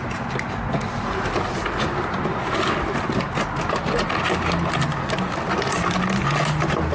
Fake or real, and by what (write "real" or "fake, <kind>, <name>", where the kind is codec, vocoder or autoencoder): real